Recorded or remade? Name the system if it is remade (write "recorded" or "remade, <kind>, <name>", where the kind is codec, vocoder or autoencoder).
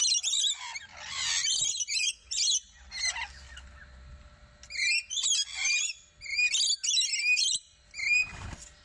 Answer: recorded